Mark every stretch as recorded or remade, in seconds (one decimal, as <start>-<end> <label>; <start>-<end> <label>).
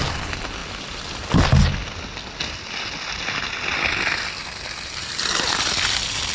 0.0-6.3 recorded